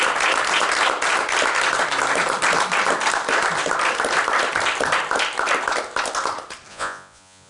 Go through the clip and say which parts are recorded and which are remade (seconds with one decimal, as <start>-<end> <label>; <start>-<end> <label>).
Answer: 0.0-6.7 recorded; 6.7-7.5 remade